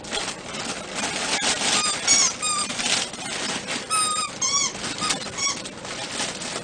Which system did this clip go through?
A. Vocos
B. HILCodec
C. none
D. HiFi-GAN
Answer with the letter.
C